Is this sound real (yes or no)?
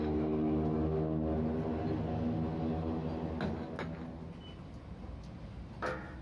yes